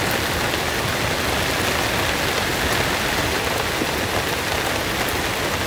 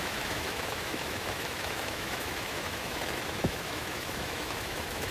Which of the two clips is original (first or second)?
first